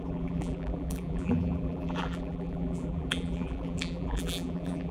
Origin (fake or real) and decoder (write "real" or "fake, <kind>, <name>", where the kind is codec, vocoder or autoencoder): fake, vocoder, BigVGAN v2